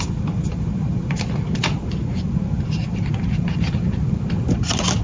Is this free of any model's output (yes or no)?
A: yes